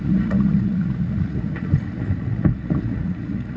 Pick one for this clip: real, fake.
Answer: fake